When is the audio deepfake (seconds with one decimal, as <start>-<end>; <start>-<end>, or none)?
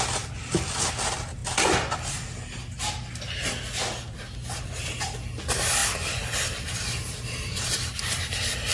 none